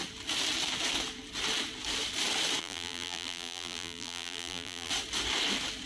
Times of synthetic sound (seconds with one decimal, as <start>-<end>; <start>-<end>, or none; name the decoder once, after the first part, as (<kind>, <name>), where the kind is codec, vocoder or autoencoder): 2.6-4.9 (vocoder, BigVGAN v2)